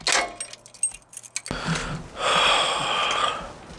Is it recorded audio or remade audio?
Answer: recorded